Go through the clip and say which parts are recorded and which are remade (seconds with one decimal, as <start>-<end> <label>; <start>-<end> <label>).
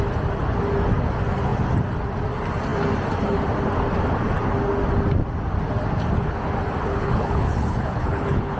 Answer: 0.0-6.9 recorded; 6.9-8.6 remade